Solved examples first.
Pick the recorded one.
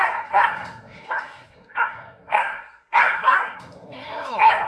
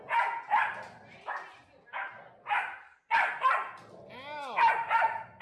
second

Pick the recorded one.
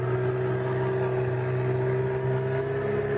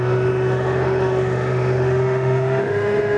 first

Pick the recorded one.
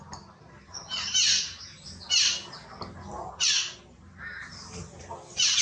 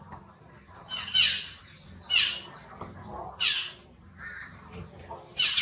first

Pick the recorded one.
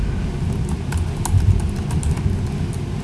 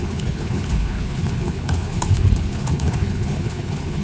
first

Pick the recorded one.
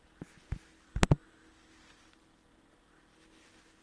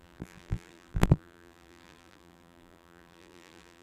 first